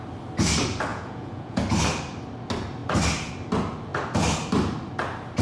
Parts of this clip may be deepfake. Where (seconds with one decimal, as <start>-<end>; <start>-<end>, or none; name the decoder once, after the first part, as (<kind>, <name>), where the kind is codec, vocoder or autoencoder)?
0.9-1.6 (vocoder, Vocos)